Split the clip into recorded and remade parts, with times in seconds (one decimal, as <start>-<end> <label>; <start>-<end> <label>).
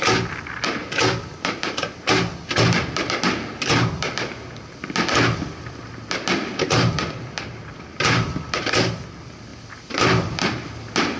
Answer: 0.0-9.5 recorded; 9.5-10.7 remade; 10.7-11.2 recorded